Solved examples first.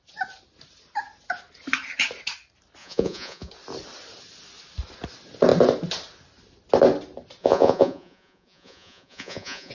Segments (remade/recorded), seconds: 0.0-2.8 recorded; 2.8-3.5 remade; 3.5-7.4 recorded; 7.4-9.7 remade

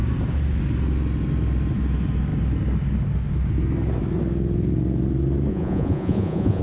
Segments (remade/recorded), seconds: 0.0-5.5 recorded; 5.5-6.6 remade

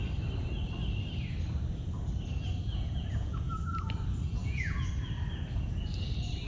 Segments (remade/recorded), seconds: 0.0-2.7 recorded; 2.7-3.5 remade; 3.5-4.4 recorded; 4.4-4.9 remade; 4.9-6.5 recorded

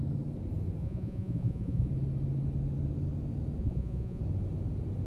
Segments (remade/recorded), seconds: 0.0-0.8 recorded; 0.8-1.9 remade; 1.9-3.6 recorded; 3.6-4.2 remade; 4.2-5.1 recorded

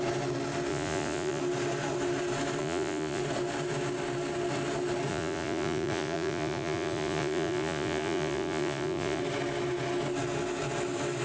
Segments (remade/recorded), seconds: 0.0-0.7 recorded; 0.7-1.4 remade; 1.4-2.6 recorded; 2.6-3.2 remade; 3.2-5.1 recorded; 5.1-9.2 remade; 9.2-11.2 recorded